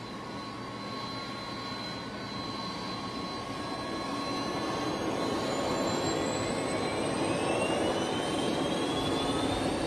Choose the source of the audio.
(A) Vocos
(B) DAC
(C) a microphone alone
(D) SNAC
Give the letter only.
C